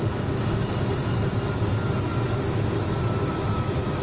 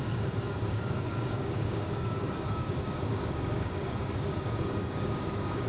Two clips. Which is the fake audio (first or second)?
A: second